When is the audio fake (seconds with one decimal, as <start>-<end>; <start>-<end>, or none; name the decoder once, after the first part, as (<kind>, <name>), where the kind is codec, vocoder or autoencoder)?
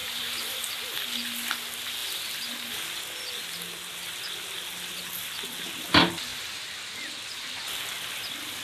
0.0-0.6 (vocoder, BigVGAN v2); 6.3-7.6